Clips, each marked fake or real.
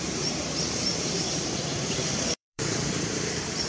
fake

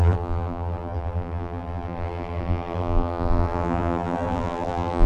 fake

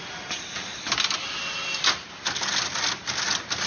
real